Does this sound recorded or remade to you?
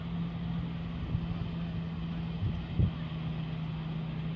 recorded